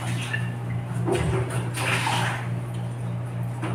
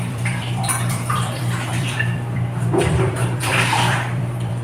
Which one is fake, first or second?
second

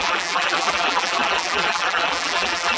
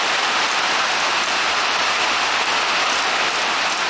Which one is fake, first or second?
first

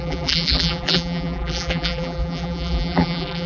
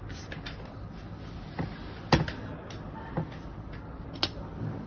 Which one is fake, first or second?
first